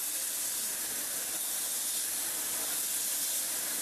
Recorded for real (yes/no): yes